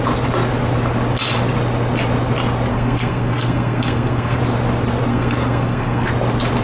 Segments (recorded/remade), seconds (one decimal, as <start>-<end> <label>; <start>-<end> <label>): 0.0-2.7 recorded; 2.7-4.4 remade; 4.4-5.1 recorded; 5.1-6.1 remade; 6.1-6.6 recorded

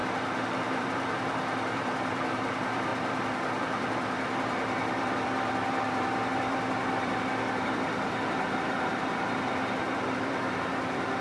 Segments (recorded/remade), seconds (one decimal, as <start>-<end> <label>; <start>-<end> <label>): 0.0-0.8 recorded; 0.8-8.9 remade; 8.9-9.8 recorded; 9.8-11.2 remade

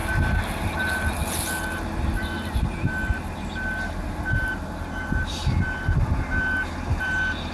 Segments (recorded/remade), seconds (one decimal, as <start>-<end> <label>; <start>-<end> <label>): 0.0-7.5 recorded

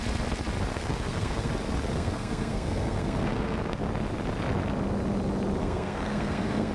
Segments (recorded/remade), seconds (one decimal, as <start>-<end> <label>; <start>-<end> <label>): 0.0-0.7 recorded; 0.7-1.5 remade; 1.5-1.9 recorded; 1.9-3.9 remade; 3.9-5.6 recorded; 5.6-6.7 remade